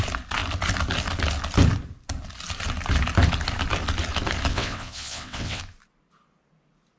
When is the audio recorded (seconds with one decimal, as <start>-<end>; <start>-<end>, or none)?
0.0-4.5; 5.6-7.0